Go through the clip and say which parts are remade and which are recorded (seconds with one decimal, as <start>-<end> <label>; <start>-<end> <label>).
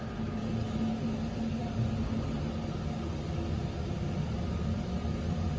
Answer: 0.0-5.6 recorded